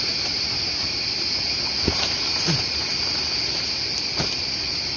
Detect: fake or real real